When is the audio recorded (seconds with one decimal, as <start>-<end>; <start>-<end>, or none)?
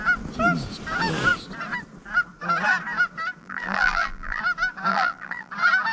0.0-3.4; 4.4-4.9; 5.5-5.9